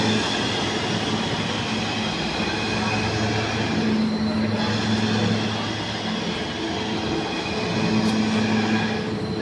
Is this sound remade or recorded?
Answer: recorded